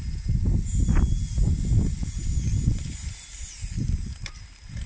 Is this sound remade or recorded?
recorded